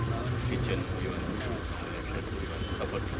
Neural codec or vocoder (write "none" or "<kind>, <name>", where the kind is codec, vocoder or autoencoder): none